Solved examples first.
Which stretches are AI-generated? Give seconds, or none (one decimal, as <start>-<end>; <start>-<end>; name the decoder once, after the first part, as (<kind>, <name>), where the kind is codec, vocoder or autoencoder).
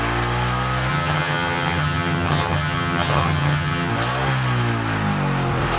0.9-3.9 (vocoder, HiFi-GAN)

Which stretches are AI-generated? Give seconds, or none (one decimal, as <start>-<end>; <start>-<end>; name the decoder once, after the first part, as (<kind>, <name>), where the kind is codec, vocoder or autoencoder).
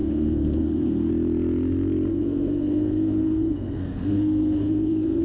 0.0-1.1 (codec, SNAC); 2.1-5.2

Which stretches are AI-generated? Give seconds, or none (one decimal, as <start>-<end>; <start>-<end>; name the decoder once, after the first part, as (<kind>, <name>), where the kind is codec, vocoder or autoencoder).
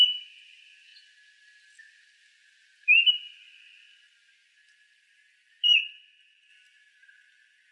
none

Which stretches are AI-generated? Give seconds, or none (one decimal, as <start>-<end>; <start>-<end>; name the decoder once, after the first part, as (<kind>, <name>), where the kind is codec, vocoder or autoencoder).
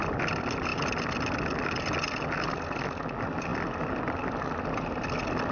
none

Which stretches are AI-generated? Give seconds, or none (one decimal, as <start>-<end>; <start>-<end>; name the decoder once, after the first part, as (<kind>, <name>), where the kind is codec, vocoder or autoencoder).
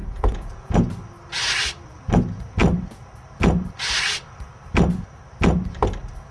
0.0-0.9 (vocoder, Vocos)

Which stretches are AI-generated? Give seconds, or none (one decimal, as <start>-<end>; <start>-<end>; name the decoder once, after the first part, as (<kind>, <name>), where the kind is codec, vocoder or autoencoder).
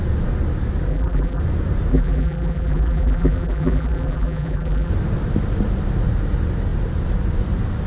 0.9-1.4 (vocoder, BigVGAN v2); 1.9-4.9